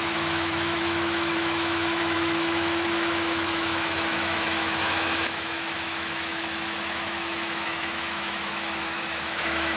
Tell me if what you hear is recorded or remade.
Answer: remade